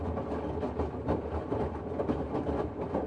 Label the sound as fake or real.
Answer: real